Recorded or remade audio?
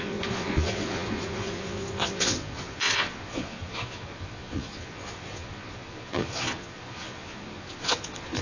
remade